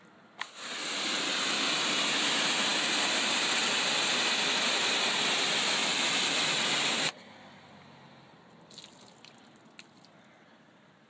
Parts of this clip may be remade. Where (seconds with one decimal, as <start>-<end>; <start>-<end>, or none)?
none